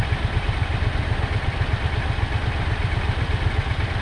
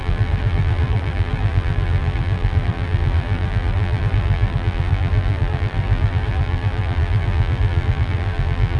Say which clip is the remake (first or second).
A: second